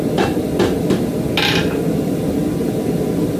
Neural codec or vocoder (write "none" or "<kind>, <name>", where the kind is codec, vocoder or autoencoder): none